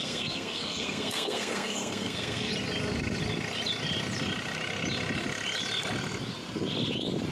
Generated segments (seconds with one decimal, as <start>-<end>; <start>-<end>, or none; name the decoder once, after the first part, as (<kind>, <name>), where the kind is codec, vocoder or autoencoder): 0.0-2.5 (codec, SNAC)